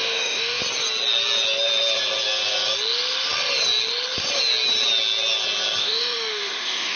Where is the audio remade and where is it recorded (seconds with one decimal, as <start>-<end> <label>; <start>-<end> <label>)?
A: 0.0-0.6 remade; 0.6-5.8 recorded; 5.8-7.0 remade